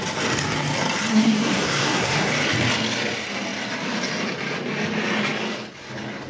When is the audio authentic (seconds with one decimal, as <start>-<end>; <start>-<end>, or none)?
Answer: 0.0-1.1; 2.3-6.3